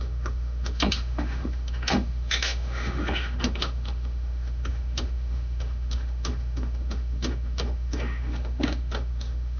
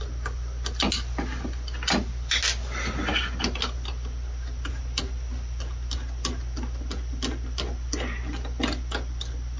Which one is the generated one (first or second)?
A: first